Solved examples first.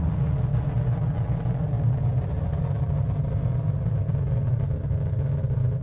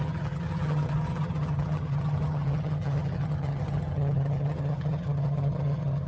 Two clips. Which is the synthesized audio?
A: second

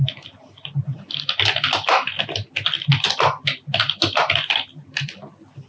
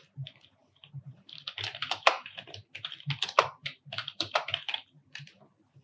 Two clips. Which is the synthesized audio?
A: second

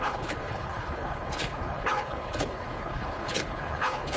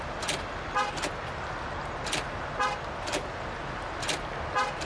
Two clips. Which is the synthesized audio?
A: first